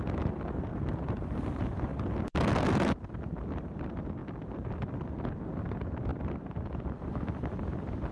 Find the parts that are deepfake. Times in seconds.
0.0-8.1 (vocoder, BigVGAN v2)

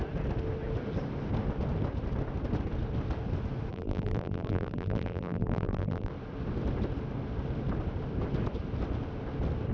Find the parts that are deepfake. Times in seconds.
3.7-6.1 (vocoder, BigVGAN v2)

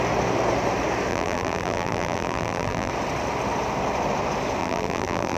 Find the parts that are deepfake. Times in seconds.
1.1-2.9 (vocoder, BigVGAN v2); 4.6-5.4